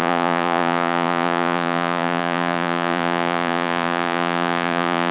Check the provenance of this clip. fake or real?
fake